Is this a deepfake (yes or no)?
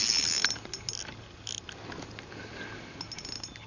no